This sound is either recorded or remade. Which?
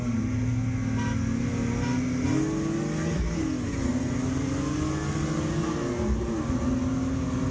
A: recorded